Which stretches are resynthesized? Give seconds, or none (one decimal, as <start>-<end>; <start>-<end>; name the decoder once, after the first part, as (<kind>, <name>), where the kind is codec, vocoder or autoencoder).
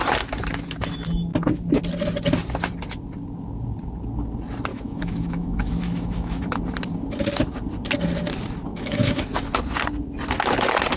4.7-6.5 (autoencoder, DAC-VAE); 8.7-9.3